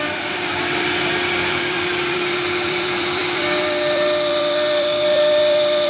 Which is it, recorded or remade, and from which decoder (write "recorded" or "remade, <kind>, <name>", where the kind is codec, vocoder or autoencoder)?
remade, vocoder, BigVGAN v2